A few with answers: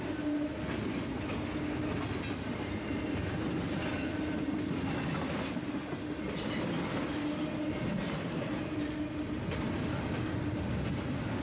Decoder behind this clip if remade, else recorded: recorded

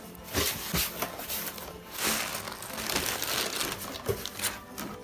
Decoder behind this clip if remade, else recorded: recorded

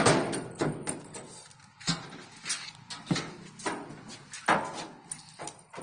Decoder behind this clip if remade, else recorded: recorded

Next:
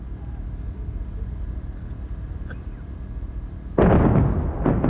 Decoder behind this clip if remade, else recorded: recorded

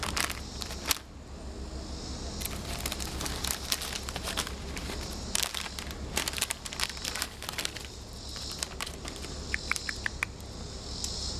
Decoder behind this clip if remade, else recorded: recorded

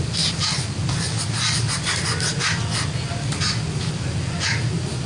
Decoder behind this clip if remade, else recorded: recorded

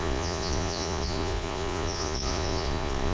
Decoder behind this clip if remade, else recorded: remade, vocoder, Vocos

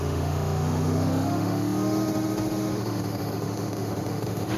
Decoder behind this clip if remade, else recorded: remade, autoencoder, DAC-VAE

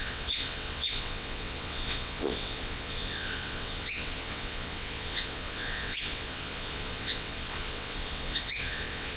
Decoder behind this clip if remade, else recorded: remade, vocoder, WaveNeXt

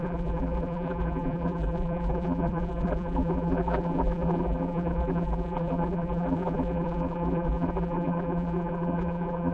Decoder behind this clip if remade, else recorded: remade, vocoder, BigVGAN v2